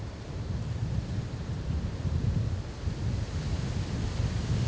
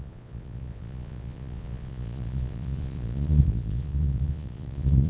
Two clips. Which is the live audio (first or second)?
first